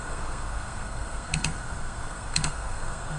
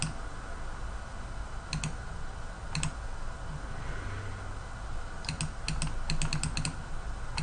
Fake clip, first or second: first